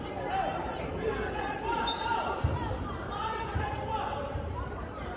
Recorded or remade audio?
remade